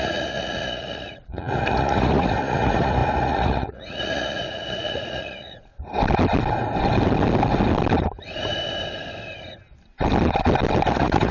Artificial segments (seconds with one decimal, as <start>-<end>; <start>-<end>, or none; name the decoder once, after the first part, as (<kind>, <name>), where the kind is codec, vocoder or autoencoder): 0.0-5.7 (vocoder, Vocos); 10.9-11.3